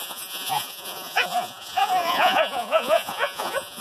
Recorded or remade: remade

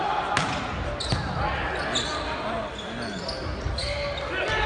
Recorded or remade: recorded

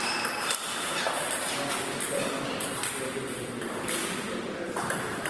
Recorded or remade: remade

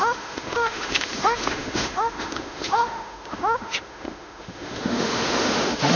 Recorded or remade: remade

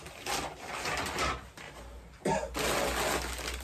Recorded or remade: recorded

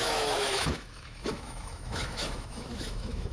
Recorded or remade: remade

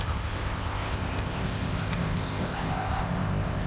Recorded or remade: remade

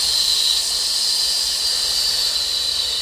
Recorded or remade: recorded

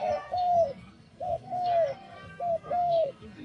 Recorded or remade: remade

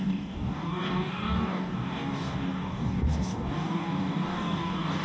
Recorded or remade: remade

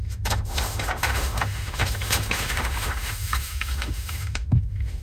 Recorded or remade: remade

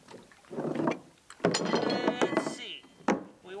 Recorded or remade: recorded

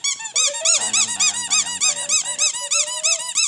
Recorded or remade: recorded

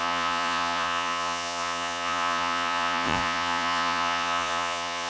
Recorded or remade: remade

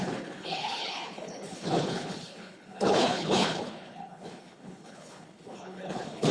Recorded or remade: remade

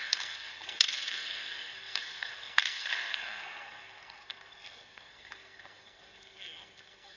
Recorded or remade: remade